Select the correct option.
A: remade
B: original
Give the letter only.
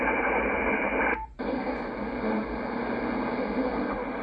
B